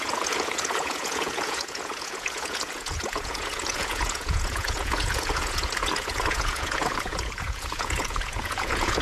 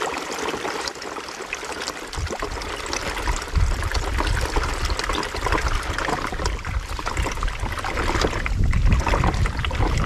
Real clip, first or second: second